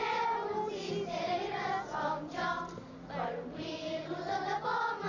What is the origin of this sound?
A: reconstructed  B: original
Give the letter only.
B